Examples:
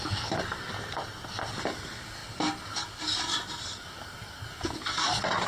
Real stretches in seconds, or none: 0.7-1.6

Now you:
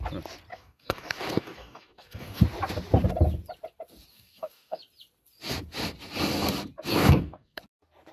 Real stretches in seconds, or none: 0.0-0.5; 2.4-4.1; 4.8-6.9; 7.6-8.1

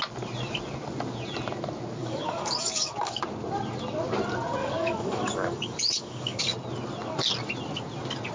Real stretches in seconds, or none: 0.0-2.0; 3.2-4.6; 6.4-8.3

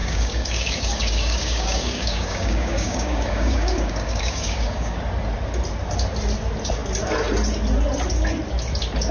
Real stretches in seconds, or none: 5.0-9.1